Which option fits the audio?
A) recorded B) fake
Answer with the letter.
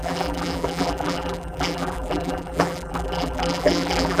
B